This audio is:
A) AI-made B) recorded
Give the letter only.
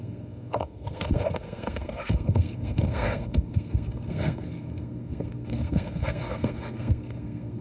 A